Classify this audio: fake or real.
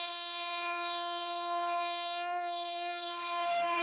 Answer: fake